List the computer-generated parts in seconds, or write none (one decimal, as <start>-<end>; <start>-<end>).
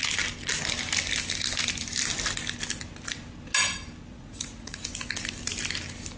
4.1-4.8